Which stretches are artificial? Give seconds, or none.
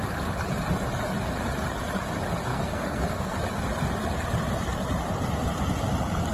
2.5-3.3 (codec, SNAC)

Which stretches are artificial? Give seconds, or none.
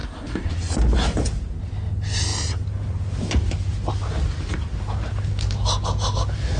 0.0-0.5 (codec, SNAC)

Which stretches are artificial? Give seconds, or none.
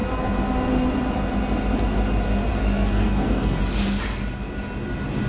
2.5-3.6 (codec, SNAC)